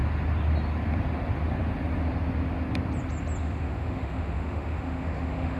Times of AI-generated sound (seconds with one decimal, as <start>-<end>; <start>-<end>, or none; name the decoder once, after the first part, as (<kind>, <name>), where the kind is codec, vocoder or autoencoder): 3.4-5.6 (autoencoder, DAC-VAE)